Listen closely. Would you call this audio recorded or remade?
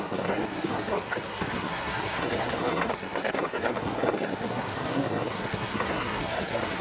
remade